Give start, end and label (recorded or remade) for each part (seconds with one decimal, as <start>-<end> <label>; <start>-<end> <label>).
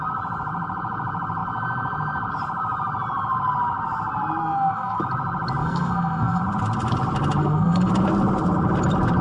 0.0-4.4 recorded; 4.4-5.0 remade; 5.0-5.6 recorded; 5.6-6.4 remade; 6.4-7.4 recorded; 7.4-7.9 remade; 7.9-9.2 recorded